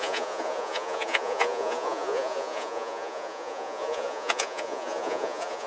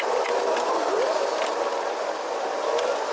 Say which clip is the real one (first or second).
second